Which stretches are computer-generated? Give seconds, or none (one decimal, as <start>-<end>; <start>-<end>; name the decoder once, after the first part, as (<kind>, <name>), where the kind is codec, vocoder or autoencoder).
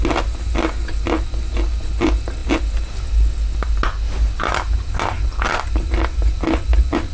none